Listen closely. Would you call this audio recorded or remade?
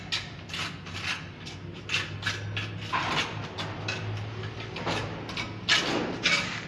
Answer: recorded